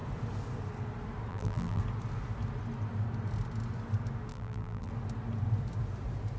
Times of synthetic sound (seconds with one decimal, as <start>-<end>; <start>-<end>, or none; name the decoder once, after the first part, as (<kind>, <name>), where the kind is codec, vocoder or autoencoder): 1.3-1.8 (vocoder, BigVGAN v2); 4.3-4.9